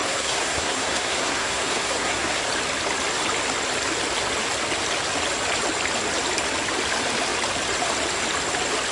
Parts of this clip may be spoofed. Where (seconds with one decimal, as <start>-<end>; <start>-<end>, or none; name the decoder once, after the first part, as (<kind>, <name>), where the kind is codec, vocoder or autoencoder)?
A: 0.0-2.4 (codec, SNAC)